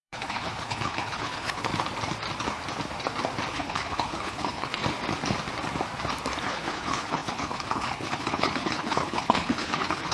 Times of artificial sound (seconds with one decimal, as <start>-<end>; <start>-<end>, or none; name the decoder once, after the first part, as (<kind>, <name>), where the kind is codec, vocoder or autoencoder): 0.0-1.7 (codec, HILCodec); 3.5-4.8; 6.4-10.1

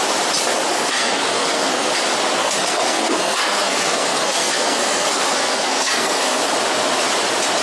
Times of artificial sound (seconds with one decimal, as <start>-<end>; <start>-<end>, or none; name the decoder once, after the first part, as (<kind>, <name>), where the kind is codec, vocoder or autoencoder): 0.7-1.9 (codec, SNAC); 2.4-6.4